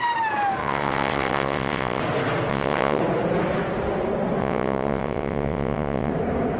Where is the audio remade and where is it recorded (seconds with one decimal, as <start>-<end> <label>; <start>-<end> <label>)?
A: 0.0-0.6 recorded; 0.6-2.0 remade; 2.0-2.5 recorded; 2.5-3.0 remade; 3.0-4.4 recorded; 4.4-6.1 remade; 6.1-6.6 recorded